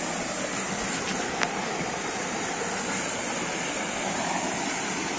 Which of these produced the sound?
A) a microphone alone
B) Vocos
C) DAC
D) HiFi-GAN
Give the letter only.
A